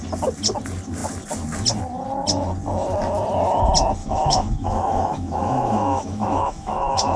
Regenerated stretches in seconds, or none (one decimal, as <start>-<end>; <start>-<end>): 4.0-7.2